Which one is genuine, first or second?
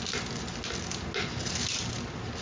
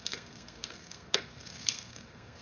first